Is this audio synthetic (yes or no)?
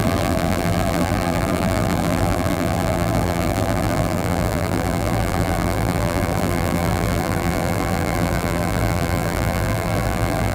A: yes